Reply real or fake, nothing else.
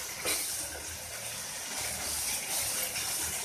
real